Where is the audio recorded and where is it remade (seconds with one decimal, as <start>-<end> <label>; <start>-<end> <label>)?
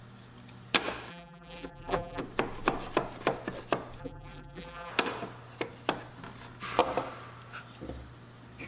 0.0-1.1 recorded; 1.1-2.2 remade; 2.2-4.0 recorded; 4.0-4.9 remade; 4.9-8.7 recorded